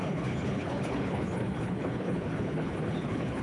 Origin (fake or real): fake